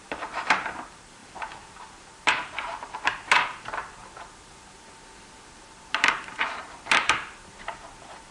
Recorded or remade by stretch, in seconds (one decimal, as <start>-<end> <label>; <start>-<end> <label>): 0.0-8.3 remade